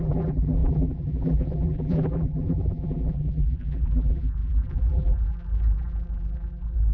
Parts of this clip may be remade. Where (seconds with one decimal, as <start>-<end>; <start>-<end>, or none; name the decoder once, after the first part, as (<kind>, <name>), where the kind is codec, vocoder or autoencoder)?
0.0-6.9 (vocoder, BigVGAN v2)